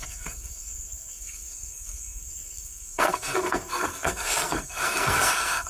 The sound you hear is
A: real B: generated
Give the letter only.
B